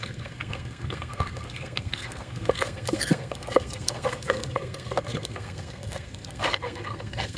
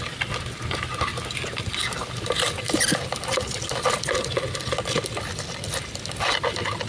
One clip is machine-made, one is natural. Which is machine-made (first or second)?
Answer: first